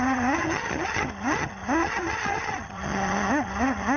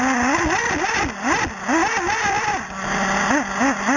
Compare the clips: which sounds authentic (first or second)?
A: second